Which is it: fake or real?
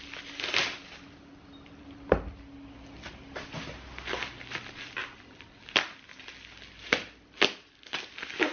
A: real